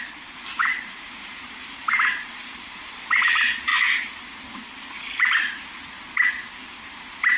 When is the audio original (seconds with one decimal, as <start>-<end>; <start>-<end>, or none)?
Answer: 3.7-7.4